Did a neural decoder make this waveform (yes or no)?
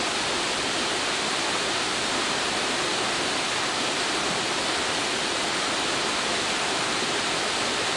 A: no